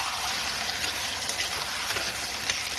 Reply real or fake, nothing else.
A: real